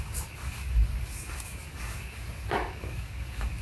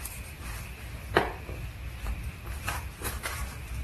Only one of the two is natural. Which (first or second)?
second